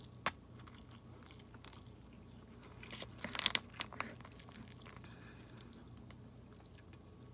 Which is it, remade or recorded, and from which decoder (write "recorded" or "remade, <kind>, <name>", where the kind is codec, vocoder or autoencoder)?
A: recorded